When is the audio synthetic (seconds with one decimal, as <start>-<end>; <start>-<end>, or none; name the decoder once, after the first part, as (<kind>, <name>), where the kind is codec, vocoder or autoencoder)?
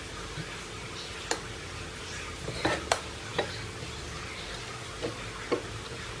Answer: none